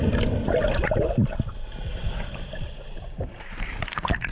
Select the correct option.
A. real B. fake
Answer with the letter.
A